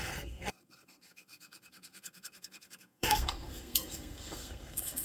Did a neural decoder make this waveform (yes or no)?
yes